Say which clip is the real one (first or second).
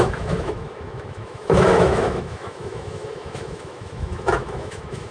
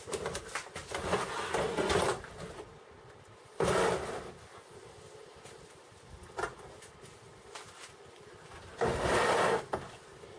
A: second